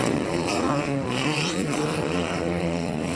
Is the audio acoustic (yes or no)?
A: no